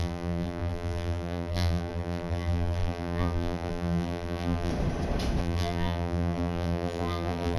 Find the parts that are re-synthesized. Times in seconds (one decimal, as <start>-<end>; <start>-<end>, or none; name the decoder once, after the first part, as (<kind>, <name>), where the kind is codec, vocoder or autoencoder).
0.0-4.7 (vocoder, BigVGAN v2); 5.4-7.6